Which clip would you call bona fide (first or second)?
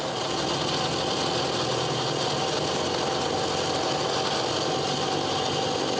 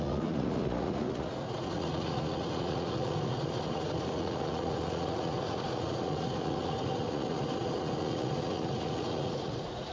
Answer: first